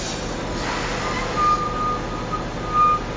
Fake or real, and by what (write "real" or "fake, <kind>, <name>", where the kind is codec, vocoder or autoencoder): real